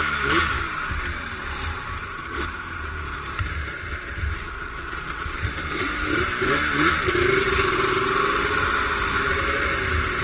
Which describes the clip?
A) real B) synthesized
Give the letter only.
B